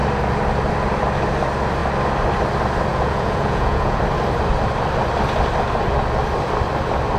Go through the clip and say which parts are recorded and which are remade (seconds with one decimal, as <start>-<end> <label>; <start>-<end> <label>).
0.0-2.9 recorded; 2.9-4.0 remade; 4.0-7.2 recorded